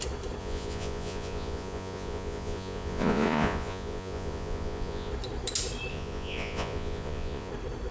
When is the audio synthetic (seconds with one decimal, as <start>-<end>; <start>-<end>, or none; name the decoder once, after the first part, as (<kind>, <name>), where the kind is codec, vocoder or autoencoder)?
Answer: 0.4-5.1 (vocoder, Vocos); 5.9-7.5